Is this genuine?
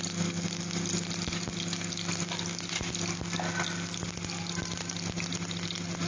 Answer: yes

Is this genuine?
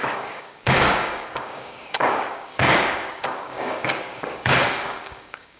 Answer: no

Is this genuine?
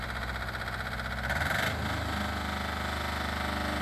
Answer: yes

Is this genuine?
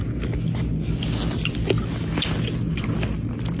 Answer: yes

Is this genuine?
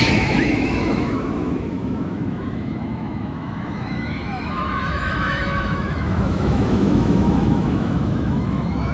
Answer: no